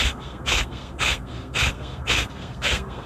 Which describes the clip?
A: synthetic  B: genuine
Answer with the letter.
A